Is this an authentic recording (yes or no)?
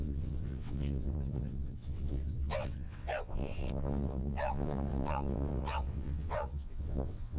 no